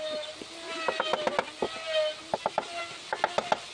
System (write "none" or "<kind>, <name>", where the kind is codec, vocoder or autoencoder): none